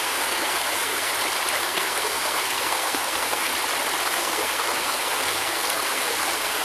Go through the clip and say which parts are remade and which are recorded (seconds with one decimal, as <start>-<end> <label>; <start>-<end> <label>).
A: 0.0-1.1 remade; 1.1-1.6 recorded; 1.6-3.5 remade; 3.5-4.0 recorded; 4.0-6.6 remade